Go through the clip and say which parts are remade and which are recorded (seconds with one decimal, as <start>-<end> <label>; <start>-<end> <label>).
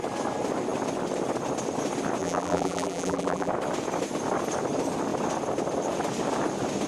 0.0-2.2 recorded; 2.2-3.5 remade; 3.5-6.9 recorded